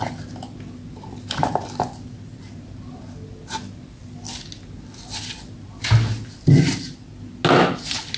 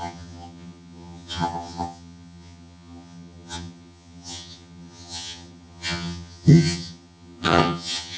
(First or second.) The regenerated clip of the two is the second